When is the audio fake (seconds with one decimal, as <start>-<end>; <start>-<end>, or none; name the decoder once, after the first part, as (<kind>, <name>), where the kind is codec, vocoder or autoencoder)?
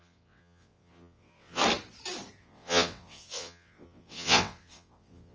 0.0-1.6 (vocoder, WaveNeXt); 2.4-5.3